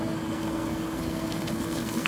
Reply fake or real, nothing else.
fake